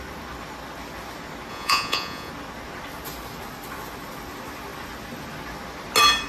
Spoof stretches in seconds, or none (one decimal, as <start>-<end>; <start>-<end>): 1.5-2.3